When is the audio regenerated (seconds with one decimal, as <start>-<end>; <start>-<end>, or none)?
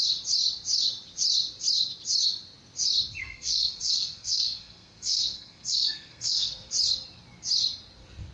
3.2-6.7